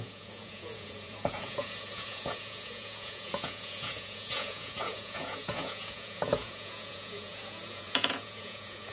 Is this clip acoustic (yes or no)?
no